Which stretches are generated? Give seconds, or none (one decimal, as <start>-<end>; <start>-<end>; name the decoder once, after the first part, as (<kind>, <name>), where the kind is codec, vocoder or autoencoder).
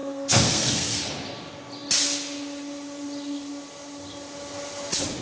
0.0-0.9 (codec, SNAC)